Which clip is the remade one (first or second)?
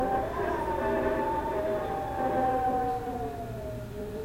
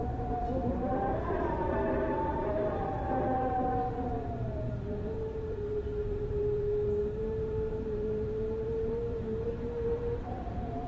second